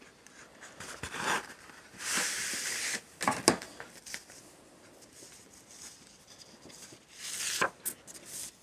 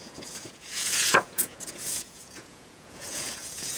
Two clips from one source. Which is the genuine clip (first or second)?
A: first